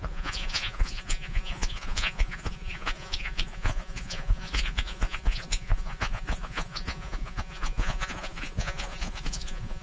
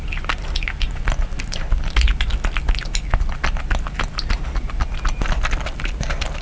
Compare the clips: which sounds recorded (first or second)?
second